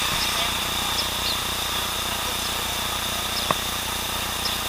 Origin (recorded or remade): recorded